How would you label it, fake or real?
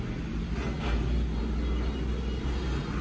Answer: real